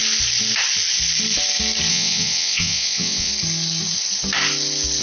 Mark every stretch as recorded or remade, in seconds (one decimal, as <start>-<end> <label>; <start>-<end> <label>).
0.0-1.9 recorded; 1.9-3.3 remade; 3.3-5.0 recorded